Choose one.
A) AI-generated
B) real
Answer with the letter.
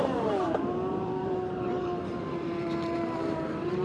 A